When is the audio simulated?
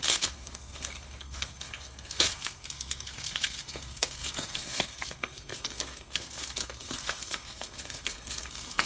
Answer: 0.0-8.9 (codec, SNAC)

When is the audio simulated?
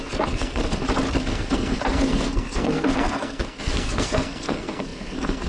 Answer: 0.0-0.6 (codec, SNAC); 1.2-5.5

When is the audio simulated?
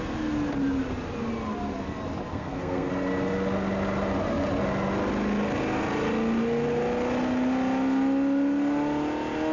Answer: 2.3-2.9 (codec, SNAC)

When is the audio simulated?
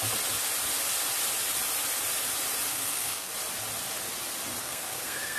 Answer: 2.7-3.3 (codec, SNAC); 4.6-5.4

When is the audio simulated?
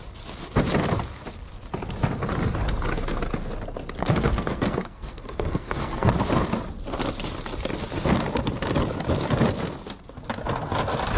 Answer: 4.0-6.1 (codec, SNAC)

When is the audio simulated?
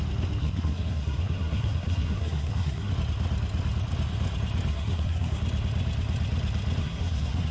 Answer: 0.4-2.9 (codec, SNAC); 4.7-5.4; 6.8-7.5